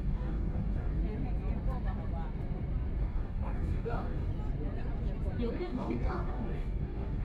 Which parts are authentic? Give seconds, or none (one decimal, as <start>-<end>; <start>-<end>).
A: 1.0-3.0; 4.3-5.5